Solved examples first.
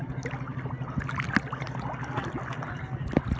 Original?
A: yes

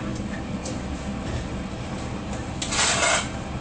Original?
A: yes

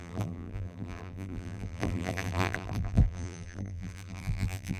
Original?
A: no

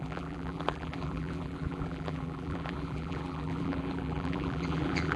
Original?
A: no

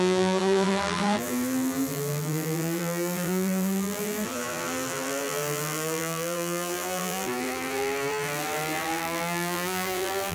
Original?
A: no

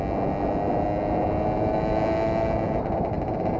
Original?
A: yes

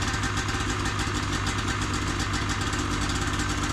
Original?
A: yes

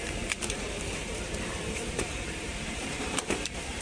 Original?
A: no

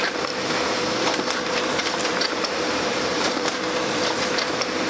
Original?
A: no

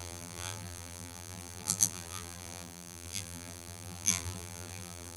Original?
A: no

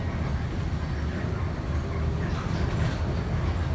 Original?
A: yes